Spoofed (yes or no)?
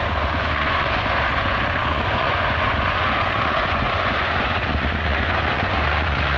yes